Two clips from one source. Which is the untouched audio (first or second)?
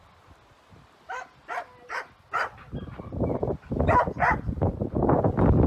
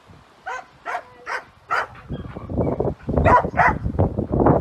second